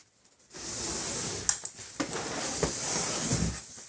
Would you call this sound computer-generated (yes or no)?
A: no